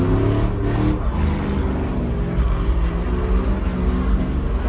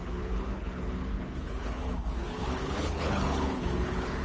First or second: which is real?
first